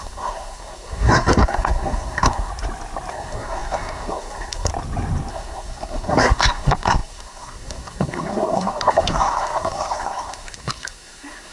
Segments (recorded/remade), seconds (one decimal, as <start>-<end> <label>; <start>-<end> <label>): 0.0-2.5 remade; 2.5-3.1 recorded; 3.1-4.7 remade; 4.7-5.3 recorded; 5.3-11.5 remade